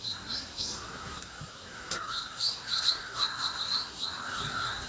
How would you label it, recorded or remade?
remade